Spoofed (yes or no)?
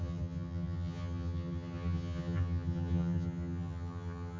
yes